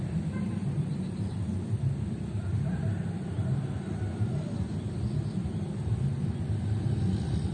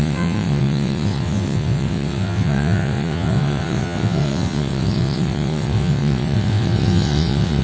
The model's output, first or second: second